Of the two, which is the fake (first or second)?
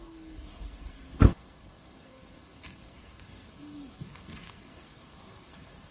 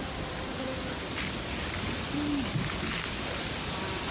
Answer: first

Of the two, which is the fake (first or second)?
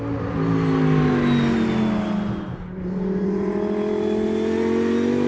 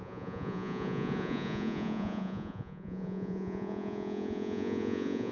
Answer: second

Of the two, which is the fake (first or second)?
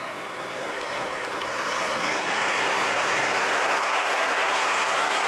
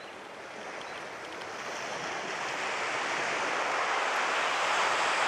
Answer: first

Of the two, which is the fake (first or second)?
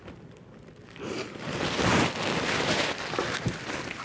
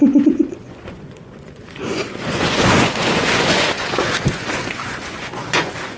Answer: second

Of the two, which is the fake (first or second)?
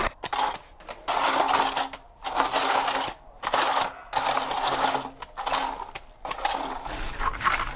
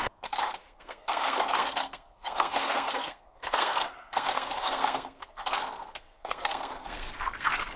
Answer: second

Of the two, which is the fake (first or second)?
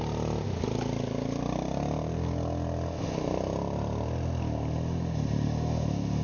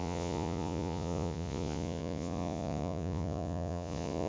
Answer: second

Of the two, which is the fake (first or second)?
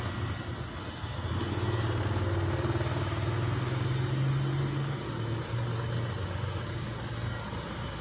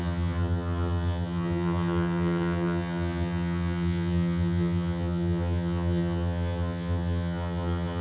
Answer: second